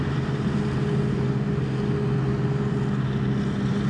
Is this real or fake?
real